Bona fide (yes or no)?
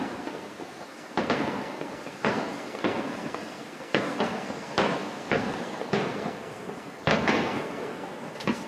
no